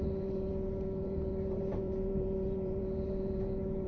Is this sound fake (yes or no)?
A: yes